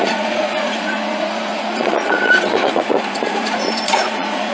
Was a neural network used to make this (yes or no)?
yes